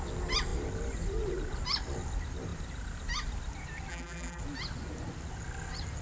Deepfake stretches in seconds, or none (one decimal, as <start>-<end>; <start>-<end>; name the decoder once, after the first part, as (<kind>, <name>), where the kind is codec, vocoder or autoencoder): 3.9-4.4 (vocoder, BigVGAN v2)